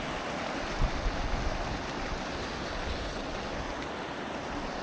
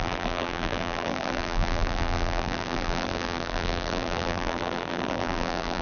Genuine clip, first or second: first